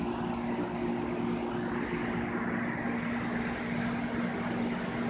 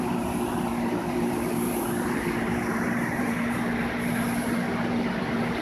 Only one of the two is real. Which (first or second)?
first